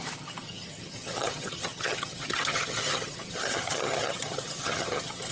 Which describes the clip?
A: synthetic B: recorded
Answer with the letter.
A